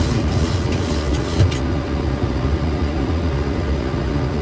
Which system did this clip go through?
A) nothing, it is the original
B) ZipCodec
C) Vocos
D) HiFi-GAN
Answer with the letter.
C